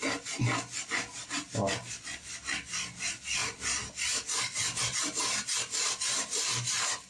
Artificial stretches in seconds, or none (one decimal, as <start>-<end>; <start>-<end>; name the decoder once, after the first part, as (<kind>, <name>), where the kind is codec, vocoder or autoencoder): none